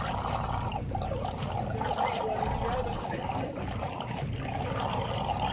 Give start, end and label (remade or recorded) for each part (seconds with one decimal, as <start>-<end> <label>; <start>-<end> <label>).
0.0-5.5 recorded